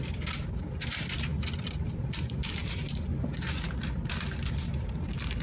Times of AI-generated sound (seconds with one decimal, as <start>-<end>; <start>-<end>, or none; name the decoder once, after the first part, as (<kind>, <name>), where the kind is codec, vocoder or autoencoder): none